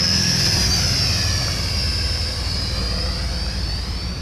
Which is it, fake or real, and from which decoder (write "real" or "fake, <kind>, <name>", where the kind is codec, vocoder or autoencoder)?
real